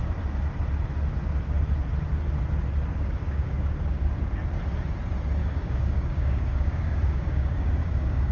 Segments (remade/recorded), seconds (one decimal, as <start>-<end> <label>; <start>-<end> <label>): 0.0-2.9 recorded; 2.9-4.3 remade; 4.3-5.4 recorded; 5.4-8.3 remade